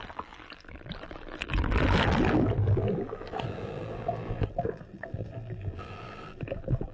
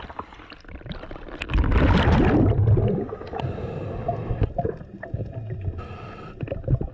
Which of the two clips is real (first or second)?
second